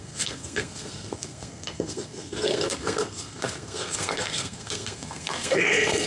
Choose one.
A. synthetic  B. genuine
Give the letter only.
A